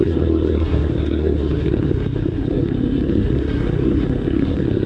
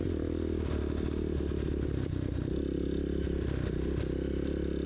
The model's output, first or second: first